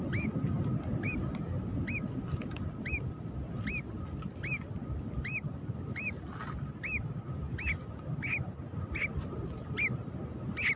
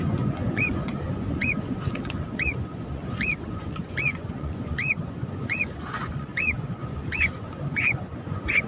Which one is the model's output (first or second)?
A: second